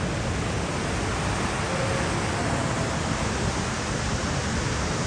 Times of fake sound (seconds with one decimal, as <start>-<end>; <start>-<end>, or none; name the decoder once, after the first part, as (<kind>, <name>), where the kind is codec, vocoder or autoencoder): 0.7-1.4 (vocoder, BigVGAN v2); 3.2-5.1